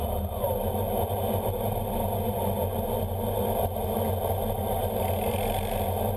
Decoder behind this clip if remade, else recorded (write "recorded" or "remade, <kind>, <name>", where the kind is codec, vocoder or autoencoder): recorded